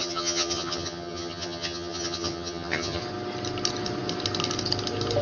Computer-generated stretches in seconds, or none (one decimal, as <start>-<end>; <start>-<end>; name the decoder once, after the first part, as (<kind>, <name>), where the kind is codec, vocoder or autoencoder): 0.0-3.0 (vocoder, HiFi-GAN)